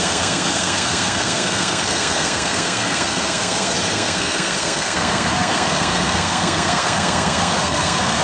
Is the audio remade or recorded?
remade